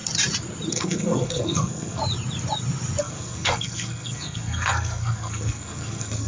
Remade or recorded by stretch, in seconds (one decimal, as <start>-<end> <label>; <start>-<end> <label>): 0.0-0.7 recorded; 0.7-2.0 remade; 2.0-3.0 recorded; 3.0-6.3 remade